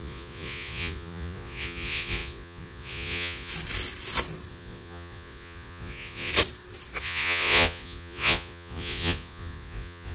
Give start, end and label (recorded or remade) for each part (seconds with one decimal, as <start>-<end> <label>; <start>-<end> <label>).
0.0-3.5 remade; 3.5-4.5 recorded; 4.5-6.3 remade; 6.3-7.0 recorded; 7.0-10.1 remade